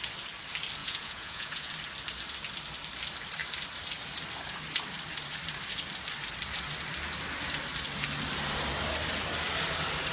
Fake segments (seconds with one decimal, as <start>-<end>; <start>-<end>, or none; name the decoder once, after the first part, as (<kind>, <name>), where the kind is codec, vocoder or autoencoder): 0.8-1.7 (vocoder, Vocos)